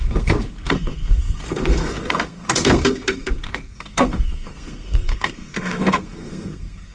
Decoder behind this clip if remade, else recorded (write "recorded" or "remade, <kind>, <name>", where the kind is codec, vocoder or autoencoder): remade, codec, SNAC